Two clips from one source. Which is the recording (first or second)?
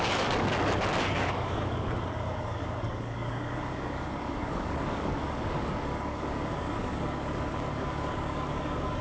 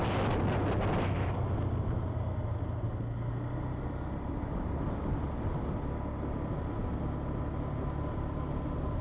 second